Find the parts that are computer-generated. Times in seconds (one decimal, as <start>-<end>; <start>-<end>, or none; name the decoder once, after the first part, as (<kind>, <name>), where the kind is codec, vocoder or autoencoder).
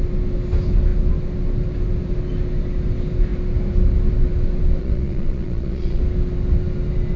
4.8-6.0 (vocoder, Vocos)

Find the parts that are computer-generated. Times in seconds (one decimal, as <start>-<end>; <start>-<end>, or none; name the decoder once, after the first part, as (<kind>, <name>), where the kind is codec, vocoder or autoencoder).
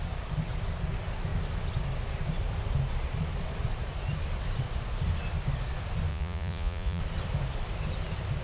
6.1-7.0 (vocoder, Vocos)